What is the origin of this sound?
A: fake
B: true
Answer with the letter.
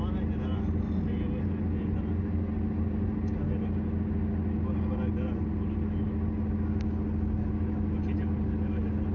B